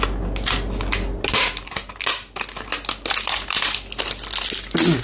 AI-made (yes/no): no